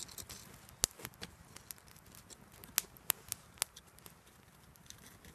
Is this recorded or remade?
recorded